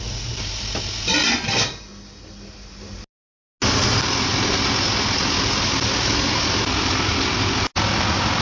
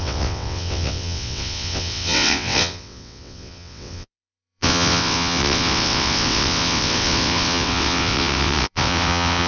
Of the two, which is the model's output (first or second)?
second